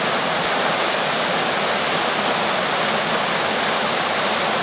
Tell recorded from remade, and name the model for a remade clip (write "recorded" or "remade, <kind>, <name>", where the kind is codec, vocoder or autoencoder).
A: recorded